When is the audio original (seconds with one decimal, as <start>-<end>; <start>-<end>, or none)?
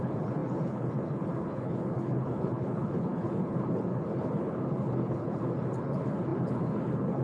none